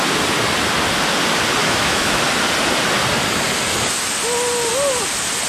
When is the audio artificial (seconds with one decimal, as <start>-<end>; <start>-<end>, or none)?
1.6-2.2